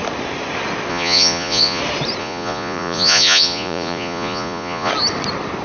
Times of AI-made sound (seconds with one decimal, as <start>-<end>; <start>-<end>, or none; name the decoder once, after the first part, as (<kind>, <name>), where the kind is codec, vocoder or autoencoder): 0.9-1.8 (vocoder, Vocos); 2.2-4.9